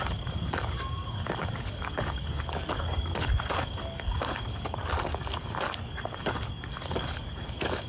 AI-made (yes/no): yes